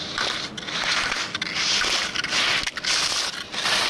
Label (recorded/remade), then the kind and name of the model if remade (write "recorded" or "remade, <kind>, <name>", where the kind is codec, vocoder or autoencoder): recorded